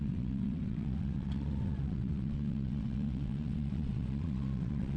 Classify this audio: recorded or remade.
remade